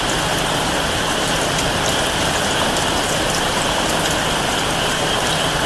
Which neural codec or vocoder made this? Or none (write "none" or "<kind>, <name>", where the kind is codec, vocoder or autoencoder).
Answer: none